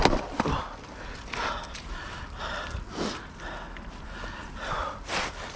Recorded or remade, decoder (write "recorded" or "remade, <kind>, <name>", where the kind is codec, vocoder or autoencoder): recorded